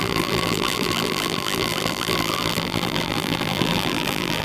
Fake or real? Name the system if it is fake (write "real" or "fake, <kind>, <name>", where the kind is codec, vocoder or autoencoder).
fake, vocoder, BigVGAN v2